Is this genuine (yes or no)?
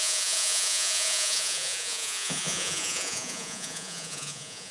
no